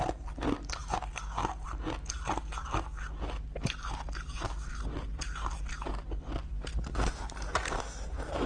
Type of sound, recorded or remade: recorded